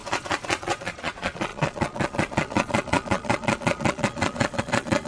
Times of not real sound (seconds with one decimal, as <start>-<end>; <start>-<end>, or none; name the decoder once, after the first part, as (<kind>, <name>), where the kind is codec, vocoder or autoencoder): 0.0-5.1 (vocoder, Vocos)